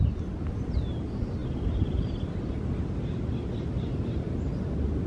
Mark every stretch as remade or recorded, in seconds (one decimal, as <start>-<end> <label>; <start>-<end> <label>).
0.0-5.1 recorded